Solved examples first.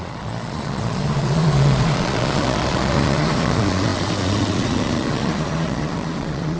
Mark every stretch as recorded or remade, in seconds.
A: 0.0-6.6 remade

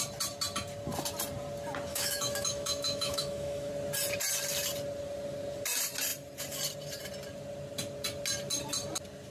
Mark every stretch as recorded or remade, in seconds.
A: 0.0-1.9 recorded; 1.9-3.7 remade; 3.7-9.3 recorded

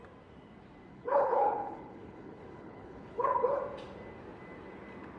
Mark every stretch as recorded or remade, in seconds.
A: 0.0-0.9 recorded; 0.9-3.6 remade; 3.6-5.2 recorded

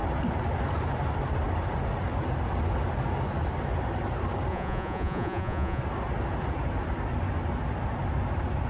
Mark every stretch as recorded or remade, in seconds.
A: 0.0-4.5 recorded; 4.5-5.8 remade; 5.8-8.7 recorded

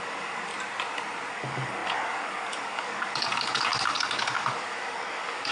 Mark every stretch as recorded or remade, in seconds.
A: 0.0-0.5 remade; 0.5-1.3 recorded; 1.3-5.5 remade